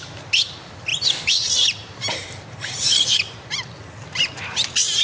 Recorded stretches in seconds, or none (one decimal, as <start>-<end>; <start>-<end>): 0.0-0.9; 3.5-5.0

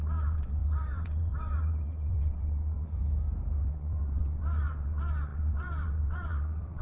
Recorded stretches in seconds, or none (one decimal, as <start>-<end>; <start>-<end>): 3.0-3.6

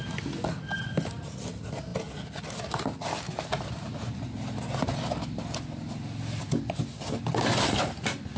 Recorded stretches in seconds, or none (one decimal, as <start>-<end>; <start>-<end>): 0.0-8.4

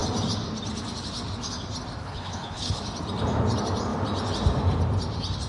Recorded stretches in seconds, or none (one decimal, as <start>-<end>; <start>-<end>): 0.0-2.0; 2.8-5.5